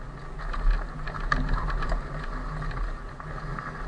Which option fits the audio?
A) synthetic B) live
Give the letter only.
B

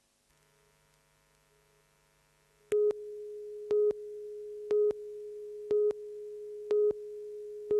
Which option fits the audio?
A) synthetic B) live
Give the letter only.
B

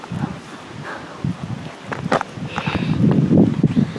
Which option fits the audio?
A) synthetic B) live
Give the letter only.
B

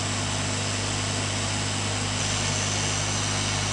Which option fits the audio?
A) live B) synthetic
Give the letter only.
A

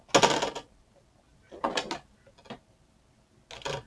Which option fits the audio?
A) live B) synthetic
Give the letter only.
A